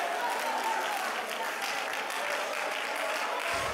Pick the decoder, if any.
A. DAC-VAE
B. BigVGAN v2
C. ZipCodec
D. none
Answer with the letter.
D